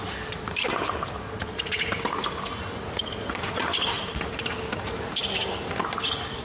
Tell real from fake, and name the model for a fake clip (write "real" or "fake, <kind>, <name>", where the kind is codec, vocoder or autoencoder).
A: real